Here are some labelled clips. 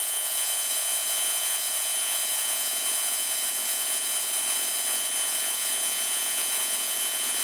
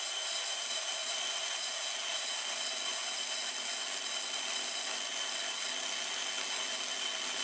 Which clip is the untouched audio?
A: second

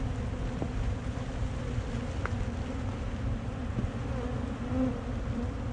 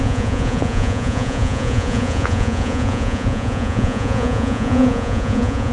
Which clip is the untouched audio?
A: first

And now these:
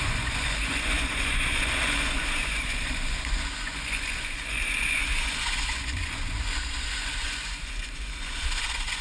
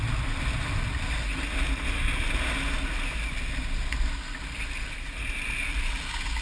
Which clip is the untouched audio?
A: second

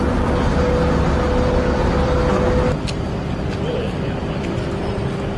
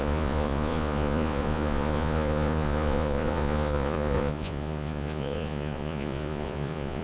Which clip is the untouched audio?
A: first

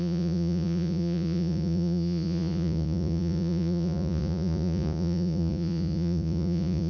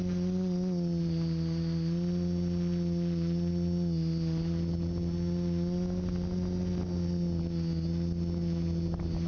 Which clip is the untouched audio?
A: second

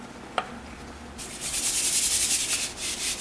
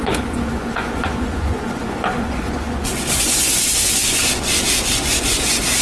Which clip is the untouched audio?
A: first